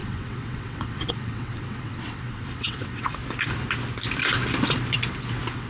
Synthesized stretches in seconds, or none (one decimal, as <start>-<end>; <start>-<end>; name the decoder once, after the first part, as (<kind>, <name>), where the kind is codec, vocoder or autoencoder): 0.0-3.2 (vocoder, WaveNeXt)